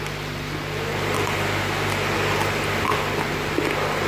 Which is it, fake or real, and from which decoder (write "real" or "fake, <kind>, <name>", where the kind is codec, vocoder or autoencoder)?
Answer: real